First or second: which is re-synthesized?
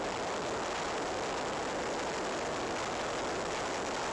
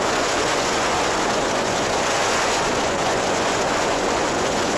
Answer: second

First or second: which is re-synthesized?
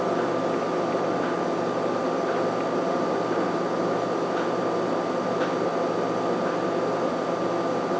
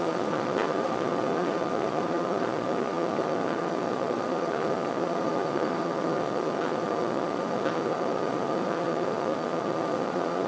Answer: second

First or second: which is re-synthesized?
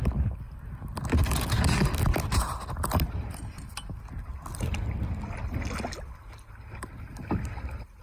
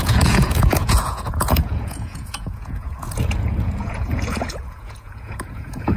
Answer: second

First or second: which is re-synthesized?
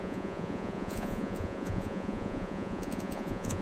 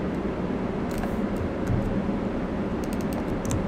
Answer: first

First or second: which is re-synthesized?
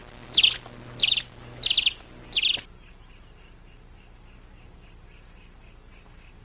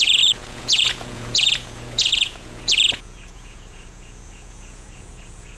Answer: second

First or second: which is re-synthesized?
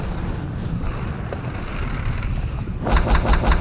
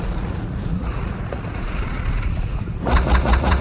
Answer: second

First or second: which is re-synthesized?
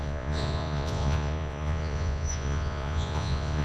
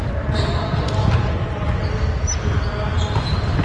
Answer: first